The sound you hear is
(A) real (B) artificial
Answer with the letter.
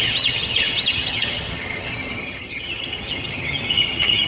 B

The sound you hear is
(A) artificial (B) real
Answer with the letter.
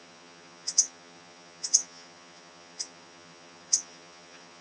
A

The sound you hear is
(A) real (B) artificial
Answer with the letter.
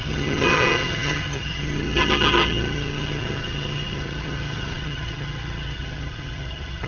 B